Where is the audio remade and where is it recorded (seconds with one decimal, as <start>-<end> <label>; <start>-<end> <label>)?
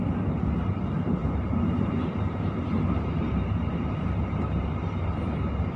0.0-1.2 recorded; 1.2-4.7 remade; 4.7-5.8 recorded